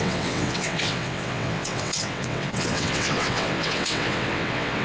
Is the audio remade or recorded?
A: remade